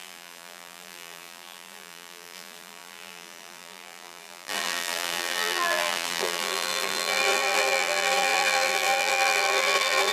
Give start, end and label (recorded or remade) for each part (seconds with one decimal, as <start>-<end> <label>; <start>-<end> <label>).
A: 0.0-10.1 remade